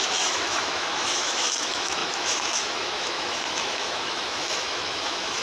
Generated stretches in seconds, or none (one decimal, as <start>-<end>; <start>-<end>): 0.0-5.4